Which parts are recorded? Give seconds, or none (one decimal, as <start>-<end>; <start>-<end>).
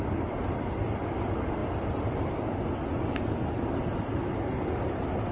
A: 0.0-5.3